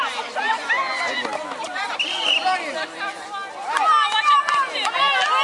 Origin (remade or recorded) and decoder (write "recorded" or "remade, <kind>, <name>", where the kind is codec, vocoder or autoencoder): recorded